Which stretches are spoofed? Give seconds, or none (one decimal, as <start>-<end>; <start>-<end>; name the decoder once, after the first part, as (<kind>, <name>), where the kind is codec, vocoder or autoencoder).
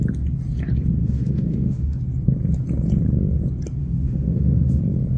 1.0-2.0 (autoencoder, DAC-VAE); 3.8-4.8